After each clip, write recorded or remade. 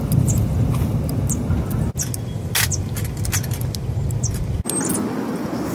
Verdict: recorded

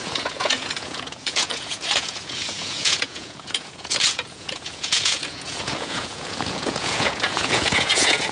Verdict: remade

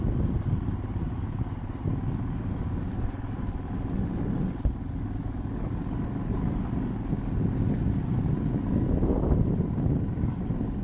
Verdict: recorded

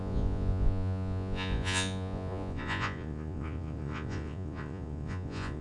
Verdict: remade